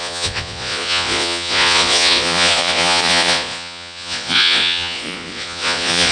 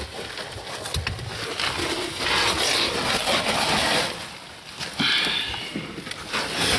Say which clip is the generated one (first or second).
first